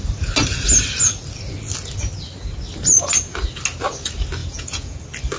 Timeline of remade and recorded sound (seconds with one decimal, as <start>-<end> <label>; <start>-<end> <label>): 0.0-4.4 recorded; 4.4-5.0 remade; 5.0-5.4 recorded